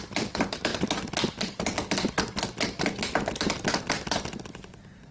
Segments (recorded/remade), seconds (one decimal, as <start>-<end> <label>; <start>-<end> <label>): 0.0-5.1 recorded